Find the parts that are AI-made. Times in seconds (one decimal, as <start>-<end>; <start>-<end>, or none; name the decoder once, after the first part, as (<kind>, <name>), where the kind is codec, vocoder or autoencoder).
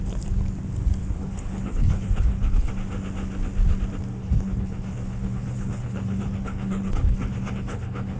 1.0-2.7 (codec, HILCodec); 4.2-8.2